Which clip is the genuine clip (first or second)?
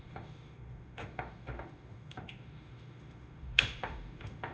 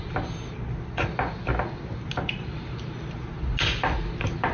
second